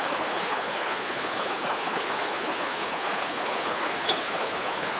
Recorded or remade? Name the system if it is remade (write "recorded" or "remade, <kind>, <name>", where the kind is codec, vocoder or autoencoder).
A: remade, codec, HILCodec